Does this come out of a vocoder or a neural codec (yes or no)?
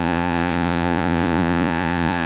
yes